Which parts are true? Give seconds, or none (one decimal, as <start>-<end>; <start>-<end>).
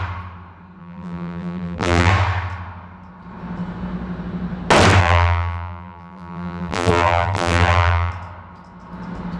0.0-0.8; 2.1-5.0; 8.1-9.4